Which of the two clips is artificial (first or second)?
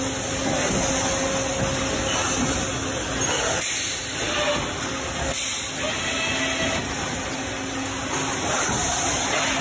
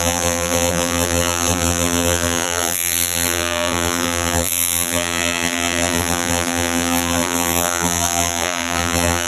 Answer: second